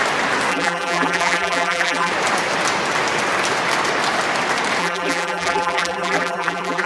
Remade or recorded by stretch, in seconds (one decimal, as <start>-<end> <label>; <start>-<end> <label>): 0.0-0.5 recorded; 0.5-2.1 remade; 2.1-4.8 recorded; 4.8-6.9 remade